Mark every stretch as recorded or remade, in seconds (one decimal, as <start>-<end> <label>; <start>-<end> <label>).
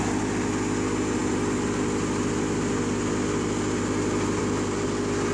0.0-5.3 recorded